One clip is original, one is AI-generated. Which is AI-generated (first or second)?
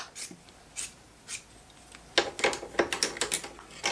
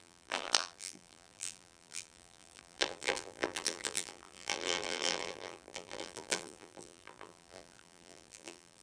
second